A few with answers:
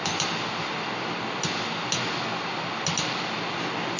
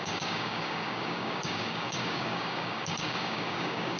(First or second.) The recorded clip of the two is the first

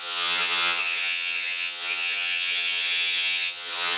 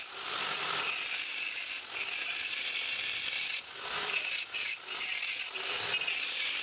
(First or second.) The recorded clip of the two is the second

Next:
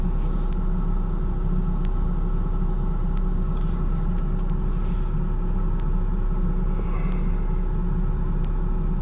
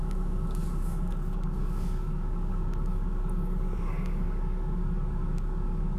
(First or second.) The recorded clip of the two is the first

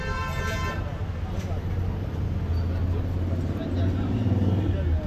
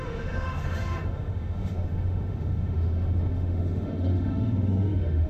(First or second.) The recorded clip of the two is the first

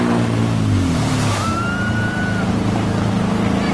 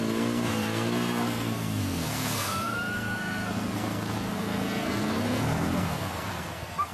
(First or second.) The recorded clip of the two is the first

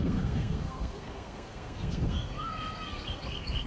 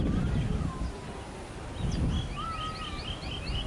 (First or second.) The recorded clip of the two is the second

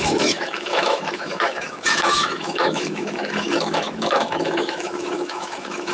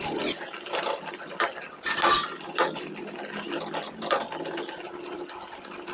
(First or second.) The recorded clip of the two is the second